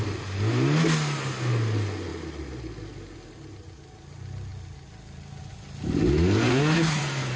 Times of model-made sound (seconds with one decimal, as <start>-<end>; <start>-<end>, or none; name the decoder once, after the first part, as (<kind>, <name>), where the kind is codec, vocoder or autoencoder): 6.5-7.0 (codec, SNAC)